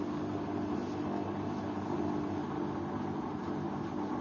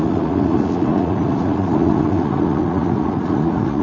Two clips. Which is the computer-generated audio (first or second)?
second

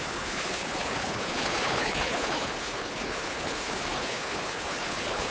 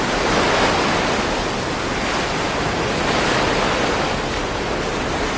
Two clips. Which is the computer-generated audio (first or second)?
first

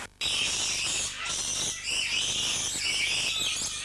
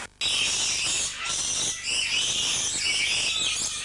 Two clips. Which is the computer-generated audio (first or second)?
first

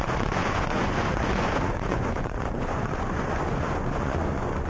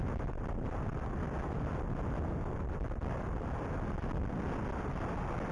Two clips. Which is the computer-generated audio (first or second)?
first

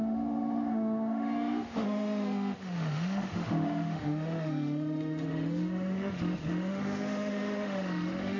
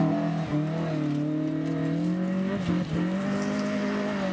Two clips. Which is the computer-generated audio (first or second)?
first